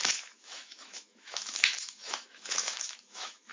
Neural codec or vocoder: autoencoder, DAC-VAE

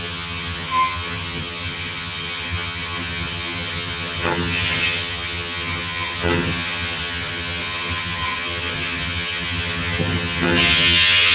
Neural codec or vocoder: vocoder, HiFi-GAN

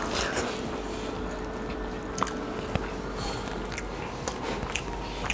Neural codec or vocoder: none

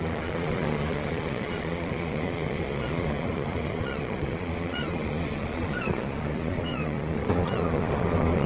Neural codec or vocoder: vocoder, Vocos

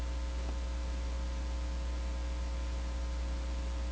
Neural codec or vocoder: none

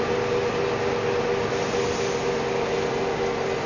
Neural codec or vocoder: none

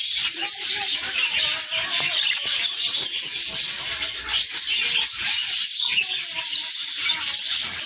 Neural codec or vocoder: vocoder, BigVGAN v2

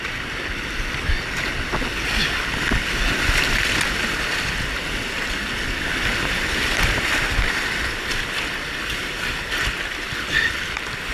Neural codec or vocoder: none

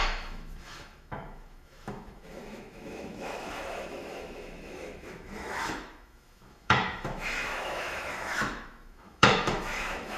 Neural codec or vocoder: autoencoder, DAC-VAE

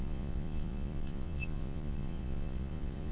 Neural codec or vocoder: vocoder, Vocos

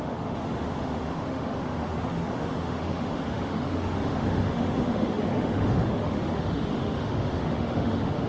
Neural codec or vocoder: autoencoder, DAC-VAE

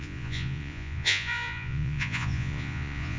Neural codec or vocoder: vocoder, Vocos